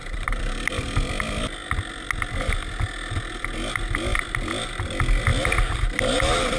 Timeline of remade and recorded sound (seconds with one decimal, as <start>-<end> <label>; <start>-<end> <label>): 0.0-6.6 recorded

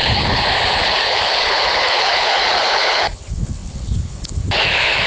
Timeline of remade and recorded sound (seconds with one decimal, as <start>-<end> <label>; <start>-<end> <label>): 0.0-5.1 remade

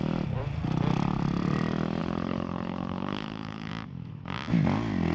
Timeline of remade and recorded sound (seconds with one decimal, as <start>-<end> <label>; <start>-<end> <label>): 0.0-2.0 recorded; 2.0-3.7 remade; 3.7-5.1 recorded

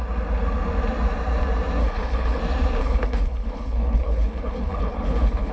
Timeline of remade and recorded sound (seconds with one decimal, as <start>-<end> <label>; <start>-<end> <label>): 0.0-1.8 recorded; 1.8-2.4 remade; 2.4-2.8 recorded; 2.8-5.5 remade